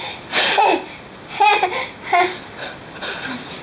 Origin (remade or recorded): recorded